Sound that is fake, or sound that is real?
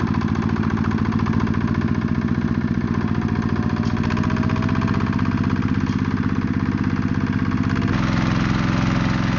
real